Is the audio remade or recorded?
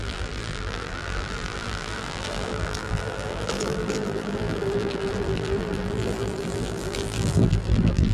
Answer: remade